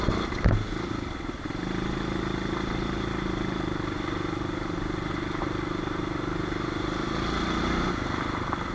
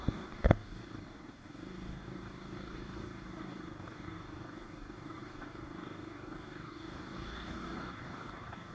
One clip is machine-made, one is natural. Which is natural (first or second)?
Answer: first